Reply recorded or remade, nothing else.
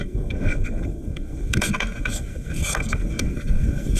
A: remade